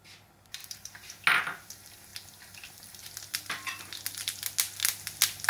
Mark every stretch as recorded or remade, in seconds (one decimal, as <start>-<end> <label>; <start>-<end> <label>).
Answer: 0.0-0.6 recorded; 0.6-1.1 remade; 1.1-5.5 recorded